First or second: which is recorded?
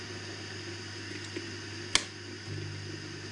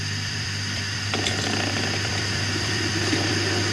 first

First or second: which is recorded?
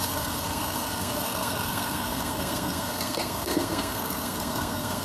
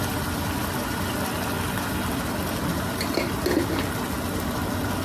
second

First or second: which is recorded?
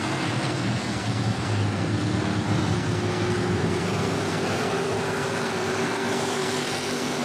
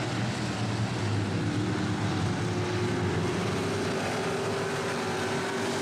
second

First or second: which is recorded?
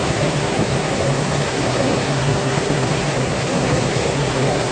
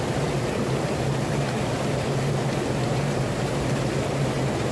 second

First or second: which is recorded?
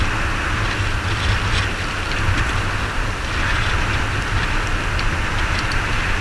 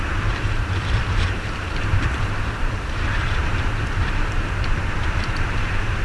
first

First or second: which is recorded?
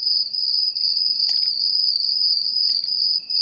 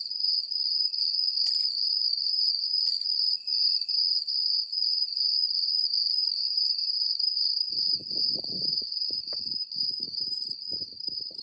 first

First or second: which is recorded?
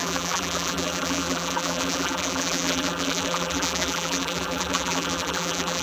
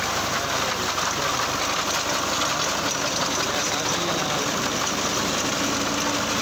second